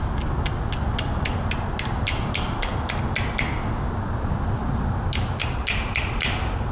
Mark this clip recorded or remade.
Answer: recorded